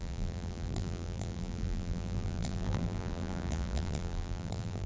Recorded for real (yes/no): no